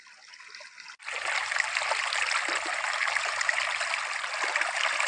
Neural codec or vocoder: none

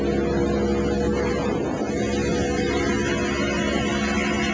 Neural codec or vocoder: none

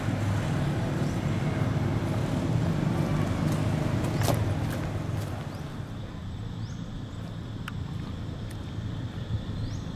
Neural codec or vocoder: none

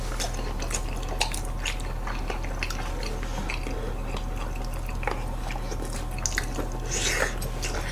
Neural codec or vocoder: none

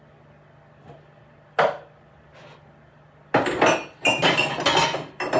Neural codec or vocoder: none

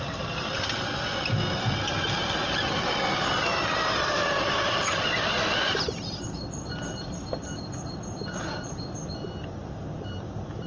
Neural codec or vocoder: vocoder, BigVGAN v2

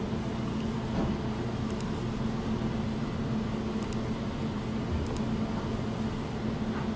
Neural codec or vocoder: none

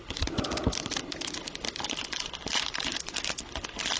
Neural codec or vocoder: vocoder, BigVGAN v2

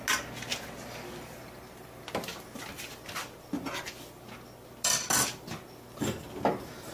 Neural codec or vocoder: none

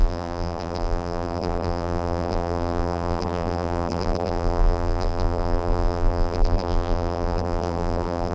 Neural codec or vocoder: vocoder, BigVGAN v2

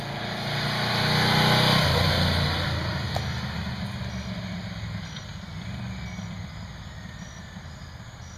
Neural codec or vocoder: none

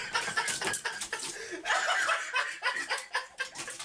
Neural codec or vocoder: vocoder, BigVGAN v2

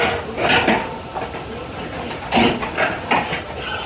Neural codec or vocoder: none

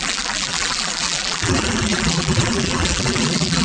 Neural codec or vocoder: vocoder, BigVGAN v2